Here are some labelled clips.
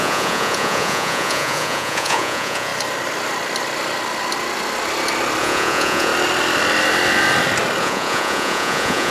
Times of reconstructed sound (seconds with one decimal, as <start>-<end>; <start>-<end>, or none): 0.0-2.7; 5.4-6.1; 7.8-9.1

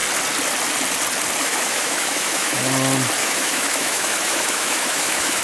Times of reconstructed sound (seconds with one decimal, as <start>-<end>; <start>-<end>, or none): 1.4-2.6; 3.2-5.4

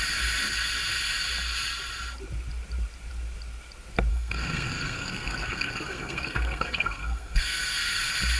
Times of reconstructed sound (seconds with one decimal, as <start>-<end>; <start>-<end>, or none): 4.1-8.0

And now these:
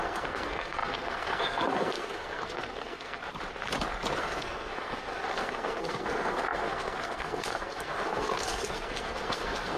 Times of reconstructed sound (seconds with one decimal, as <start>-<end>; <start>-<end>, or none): 0.0-3.2; 4.2-9.8

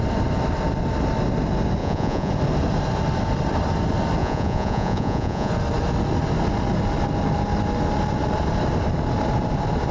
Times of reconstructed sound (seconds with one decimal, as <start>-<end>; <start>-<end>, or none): 1.8-2.3; 4.2-5.5

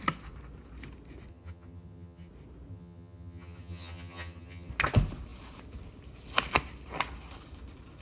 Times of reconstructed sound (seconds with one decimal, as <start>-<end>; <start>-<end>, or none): 1.3-2.3; 2.7-4.7

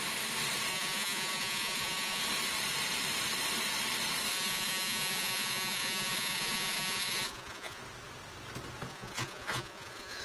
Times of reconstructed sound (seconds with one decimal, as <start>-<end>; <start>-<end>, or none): 0.7-2.2; 4.3-7.8; 8.9-10.2

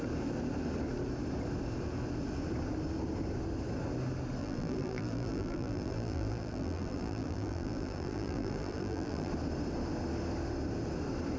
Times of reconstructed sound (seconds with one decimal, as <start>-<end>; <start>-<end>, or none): 4.4-9.3